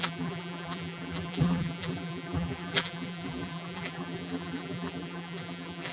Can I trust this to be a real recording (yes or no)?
no